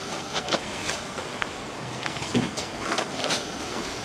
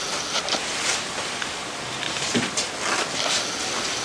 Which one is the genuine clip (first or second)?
second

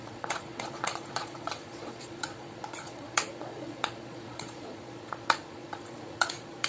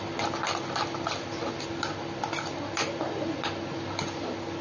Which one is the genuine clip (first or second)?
second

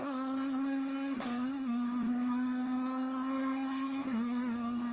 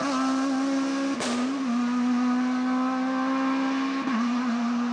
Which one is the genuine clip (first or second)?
second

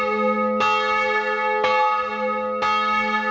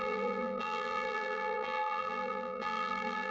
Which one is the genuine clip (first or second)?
first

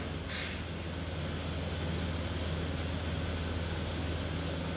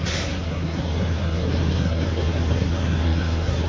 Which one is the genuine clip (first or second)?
first